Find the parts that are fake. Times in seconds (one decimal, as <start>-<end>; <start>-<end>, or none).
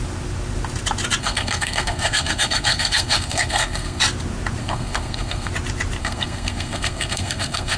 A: 1.2-4.0; 4.6-5.5; 6.0-7.8